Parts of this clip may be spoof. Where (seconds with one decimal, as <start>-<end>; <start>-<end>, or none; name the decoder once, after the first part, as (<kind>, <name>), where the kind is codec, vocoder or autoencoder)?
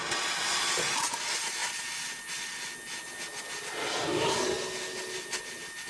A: none